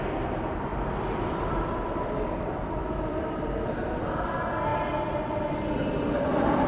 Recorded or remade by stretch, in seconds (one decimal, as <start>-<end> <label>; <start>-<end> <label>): 0.0-0.7 recorded; 0.7-4.1 remade; 4.1-6.7 recorded